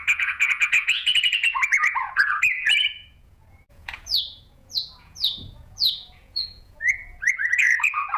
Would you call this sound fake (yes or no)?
yes